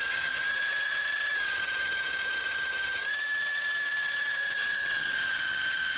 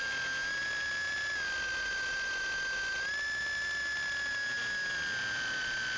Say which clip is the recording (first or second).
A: second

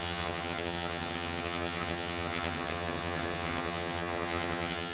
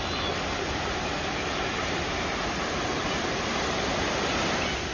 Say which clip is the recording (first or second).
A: second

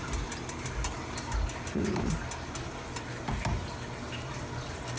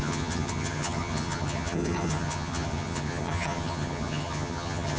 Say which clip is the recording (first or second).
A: first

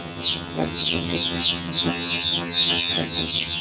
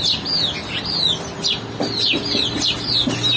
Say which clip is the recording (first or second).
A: second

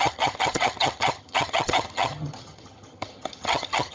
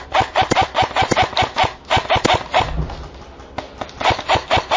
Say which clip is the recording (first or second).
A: second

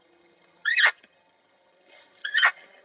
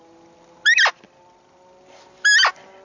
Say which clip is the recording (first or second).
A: second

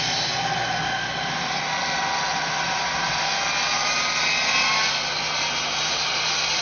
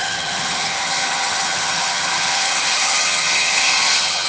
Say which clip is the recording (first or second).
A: first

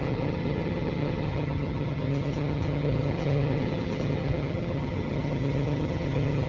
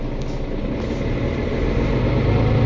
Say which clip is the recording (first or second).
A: second